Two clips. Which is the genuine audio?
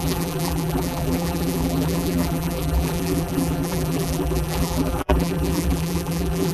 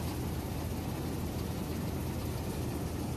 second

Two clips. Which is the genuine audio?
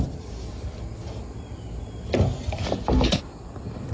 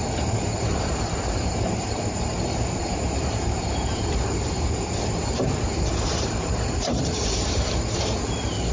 first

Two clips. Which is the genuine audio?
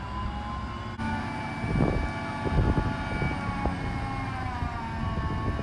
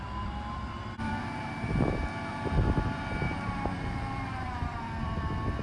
first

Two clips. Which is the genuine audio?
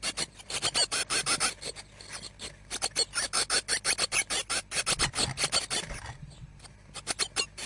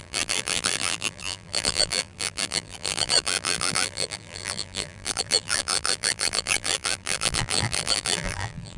first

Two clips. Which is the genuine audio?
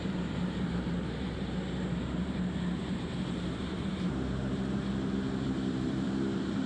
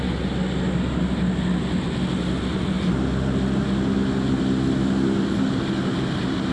second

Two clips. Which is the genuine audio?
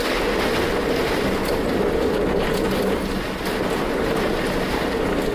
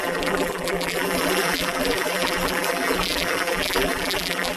first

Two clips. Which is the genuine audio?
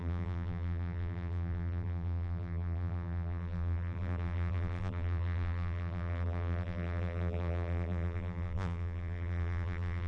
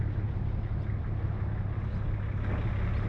second